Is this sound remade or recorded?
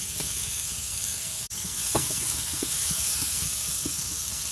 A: remade